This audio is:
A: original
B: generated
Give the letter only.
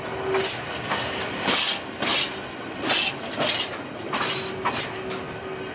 A